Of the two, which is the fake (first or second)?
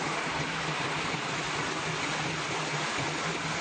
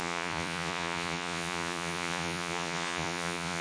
second